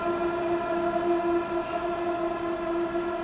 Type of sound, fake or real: real